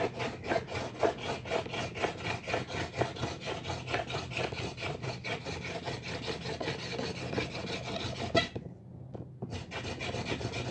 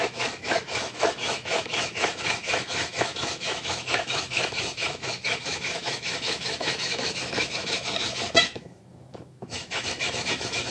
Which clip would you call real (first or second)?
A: first